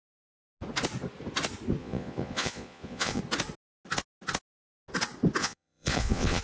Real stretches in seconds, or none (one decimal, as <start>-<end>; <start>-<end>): 0.0-1.8; 3.2-5.4